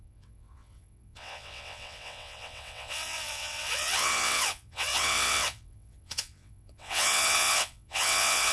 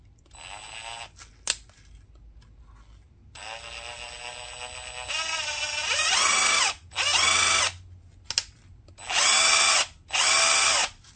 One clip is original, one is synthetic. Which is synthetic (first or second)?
first